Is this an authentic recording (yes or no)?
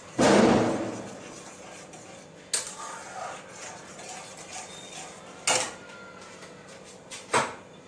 yes